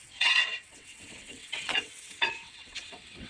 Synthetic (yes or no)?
yes